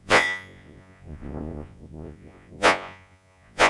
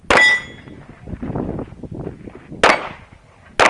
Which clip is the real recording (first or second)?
second